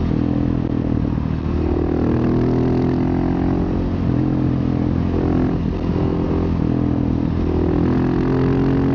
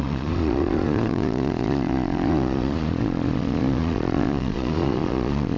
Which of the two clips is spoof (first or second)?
second